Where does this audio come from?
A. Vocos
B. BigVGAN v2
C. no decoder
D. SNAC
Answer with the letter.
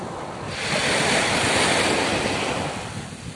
C